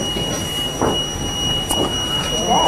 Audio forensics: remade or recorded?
recorded